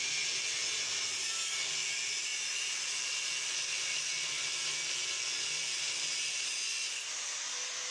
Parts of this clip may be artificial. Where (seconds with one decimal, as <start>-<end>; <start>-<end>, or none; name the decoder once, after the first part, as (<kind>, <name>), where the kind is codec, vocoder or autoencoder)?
none